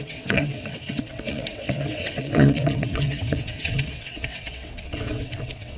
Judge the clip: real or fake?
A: fake